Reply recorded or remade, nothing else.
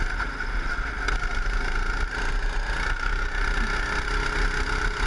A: recorded